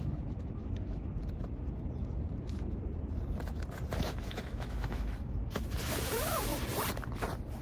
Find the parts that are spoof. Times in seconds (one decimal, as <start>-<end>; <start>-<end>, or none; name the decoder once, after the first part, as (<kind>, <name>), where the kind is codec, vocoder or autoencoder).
0.0-1.2 (autoencoder, DAC-VAE); 3.9-6.5